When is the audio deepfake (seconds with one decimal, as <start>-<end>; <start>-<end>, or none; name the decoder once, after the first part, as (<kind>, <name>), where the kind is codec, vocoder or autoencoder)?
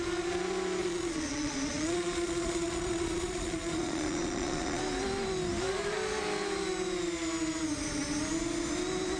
0.8-4.8 (vocoder, Vocos)